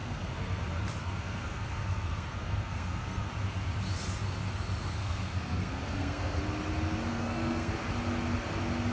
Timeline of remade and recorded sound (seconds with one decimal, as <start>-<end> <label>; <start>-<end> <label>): 0.0-0.6 remade; 0.6-1.0 recorded; 1.0-3.3 remade; 3.3-5.0 recorded; 5.0-6.4 remade; 6.4-7.1 recorded; 7.1-7.7 remade; 7.7-8.9 recorded